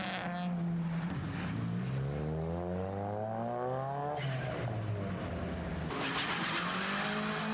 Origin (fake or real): real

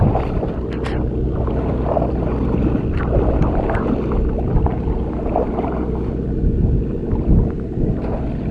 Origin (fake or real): real